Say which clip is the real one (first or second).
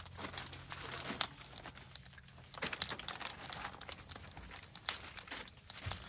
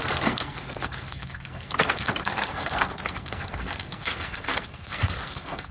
first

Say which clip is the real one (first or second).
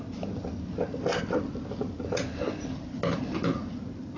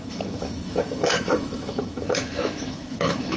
first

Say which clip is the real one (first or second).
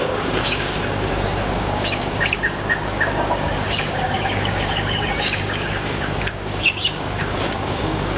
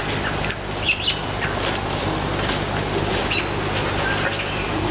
second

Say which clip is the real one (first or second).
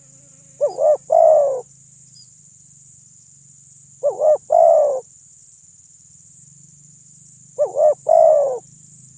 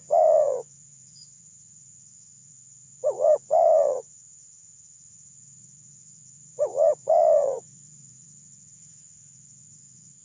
first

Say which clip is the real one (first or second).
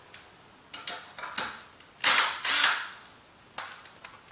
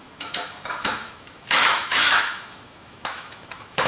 first